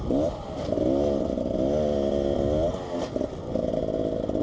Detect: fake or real real